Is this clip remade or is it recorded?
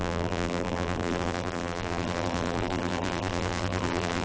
remade